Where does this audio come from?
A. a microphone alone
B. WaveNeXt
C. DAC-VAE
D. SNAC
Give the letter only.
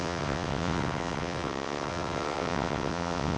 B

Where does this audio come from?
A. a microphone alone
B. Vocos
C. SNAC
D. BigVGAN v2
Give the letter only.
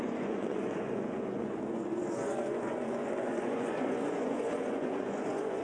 B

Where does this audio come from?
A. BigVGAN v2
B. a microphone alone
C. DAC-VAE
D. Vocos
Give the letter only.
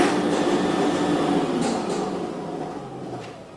B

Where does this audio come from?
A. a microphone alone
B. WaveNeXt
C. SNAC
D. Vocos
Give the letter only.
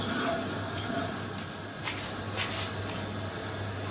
A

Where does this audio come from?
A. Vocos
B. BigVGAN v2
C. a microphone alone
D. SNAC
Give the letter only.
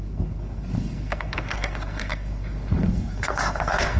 D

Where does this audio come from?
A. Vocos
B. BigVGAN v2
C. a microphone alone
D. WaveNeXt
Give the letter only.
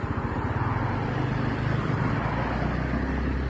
C